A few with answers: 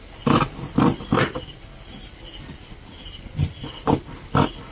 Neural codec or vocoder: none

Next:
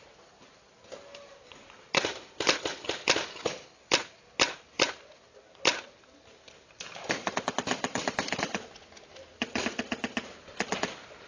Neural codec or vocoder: none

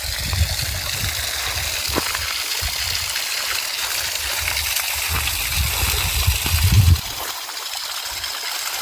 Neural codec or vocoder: none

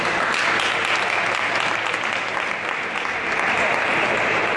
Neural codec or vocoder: none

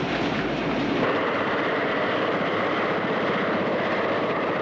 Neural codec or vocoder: none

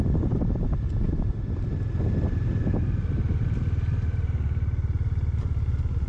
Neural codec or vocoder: none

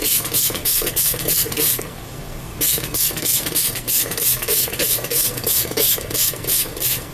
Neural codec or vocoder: codec, SNAC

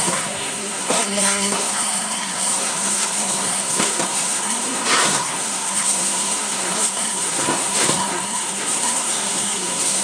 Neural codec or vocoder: codec, SNAC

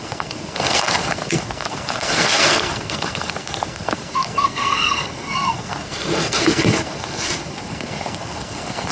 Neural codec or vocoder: codec, SNAC